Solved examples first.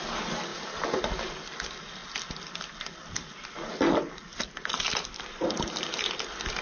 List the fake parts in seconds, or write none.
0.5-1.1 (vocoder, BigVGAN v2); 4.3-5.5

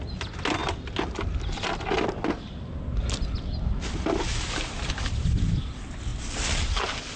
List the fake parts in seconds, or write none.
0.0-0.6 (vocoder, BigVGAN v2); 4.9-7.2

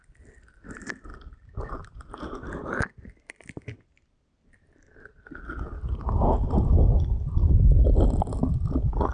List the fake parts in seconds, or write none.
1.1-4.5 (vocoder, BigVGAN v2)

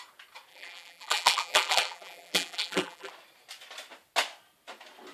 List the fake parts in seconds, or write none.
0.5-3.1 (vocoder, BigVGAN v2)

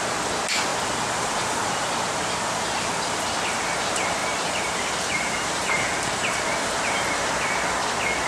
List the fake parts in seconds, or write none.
0.7-3.2 (vocoder, BigVGAN v2); 4.2-7.3